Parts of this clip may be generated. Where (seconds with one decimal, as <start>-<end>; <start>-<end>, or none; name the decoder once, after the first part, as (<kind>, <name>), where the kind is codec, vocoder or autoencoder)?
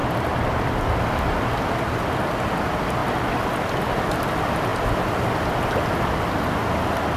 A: none